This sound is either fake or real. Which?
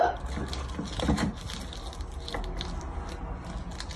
real